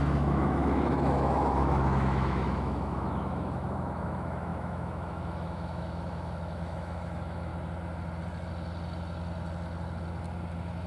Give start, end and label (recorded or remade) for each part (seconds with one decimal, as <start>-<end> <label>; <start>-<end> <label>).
0.0-7.5 remade; 7.5-10.9 recorded